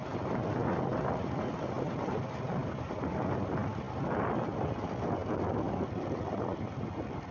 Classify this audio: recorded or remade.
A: recorded